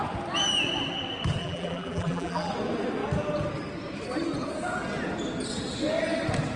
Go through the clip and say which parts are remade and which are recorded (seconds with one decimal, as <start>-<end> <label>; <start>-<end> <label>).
0.0-1.4 recorded; 1.4-2.5 remade; 2.5-6.6 recorded